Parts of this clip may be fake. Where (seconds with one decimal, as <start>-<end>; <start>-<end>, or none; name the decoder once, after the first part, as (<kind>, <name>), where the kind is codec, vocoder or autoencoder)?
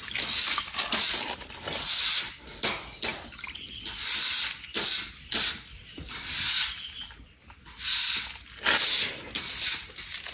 3.1-3.7 (vocoder, BigVGAN v2)